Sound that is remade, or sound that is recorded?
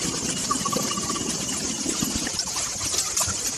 recorded